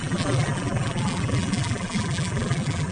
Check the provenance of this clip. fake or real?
fake